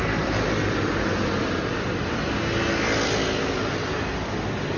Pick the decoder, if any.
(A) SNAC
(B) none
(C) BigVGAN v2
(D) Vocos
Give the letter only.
B